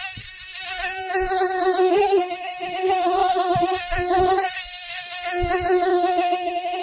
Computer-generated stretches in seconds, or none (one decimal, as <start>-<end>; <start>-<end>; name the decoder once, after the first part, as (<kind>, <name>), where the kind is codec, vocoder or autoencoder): 0.5-2.8 (vocoder, BigVGAN v2); 3.2-5.0